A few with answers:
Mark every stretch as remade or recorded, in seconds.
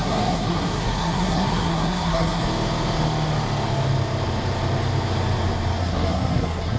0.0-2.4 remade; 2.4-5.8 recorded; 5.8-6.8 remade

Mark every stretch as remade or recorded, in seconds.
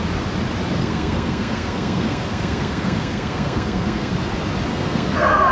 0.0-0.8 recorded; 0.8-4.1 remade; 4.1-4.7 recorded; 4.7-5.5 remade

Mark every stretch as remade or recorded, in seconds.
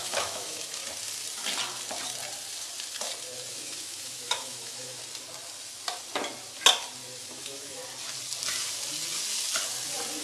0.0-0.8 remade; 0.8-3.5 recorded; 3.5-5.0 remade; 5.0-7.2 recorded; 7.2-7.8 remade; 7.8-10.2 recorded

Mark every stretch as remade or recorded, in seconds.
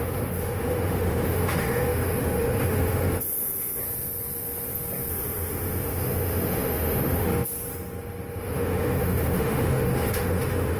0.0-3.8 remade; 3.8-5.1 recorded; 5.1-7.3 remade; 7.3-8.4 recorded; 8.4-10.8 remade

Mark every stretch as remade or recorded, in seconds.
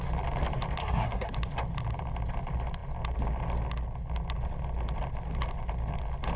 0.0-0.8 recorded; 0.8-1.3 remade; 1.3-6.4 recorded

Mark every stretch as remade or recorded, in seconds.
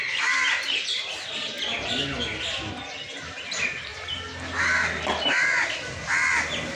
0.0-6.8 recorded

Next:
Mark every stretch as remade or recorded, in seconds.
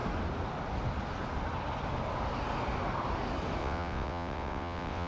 0.0-3.6 recorded; 3.6-5.1 remade